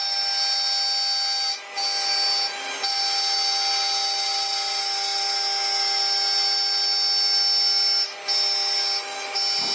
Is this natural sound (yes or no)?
yes